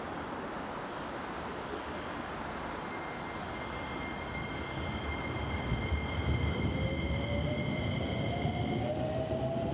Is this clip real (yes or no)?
yes